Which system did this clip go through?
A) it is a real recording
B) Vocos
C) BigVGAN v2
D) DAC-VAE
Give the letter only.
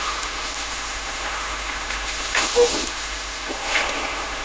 D